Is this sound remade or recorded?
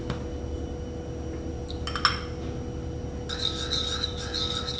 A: recorded